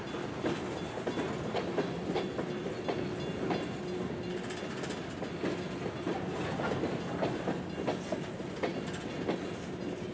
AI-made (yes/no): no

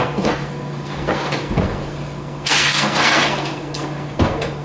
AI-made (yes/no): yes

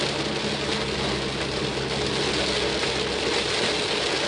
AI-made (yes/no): no